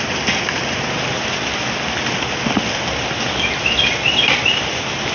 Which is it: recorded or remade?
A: recorded